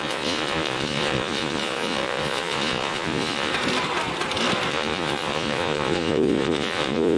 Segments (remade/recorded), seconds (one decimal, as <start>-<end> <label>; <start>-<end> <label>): 0.0-3.5 remade; 3.5-4.7 recorded; 4.7-7.2 remade